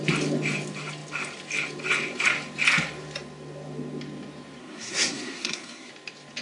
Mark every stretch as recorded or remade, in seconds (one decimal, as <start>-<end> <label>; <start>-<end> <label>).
0.0-4.6 recorded; 4.6-5.9 remade; 5.9-6.4 recorded

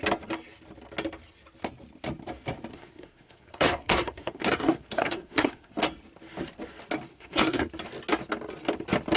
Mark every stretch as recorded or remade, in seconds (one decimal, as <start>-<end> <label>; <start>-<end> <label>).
0.0-2.7 recorded; 2.7-5.7 remade; 5.7-7.1 recorded; 7.1-7.7 remade; 7.7-9.2 recorded

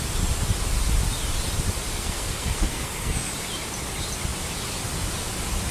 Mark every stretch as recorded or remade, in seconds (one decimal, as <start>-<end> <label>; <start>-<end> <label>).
0.0-1.9 recorded; 1.9-3.3 remade; 3.3-5.7 recorded